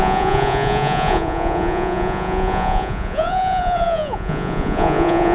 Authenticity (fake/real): fake